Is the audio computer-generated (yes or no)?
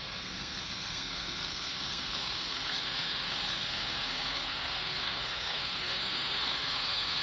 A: yes